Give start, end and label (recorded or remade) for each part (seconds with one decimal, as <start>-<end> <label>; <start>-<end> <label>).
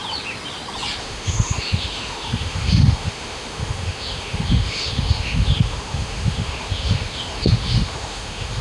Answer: 0.0-1.0 recorded; 1.0-8.6 remade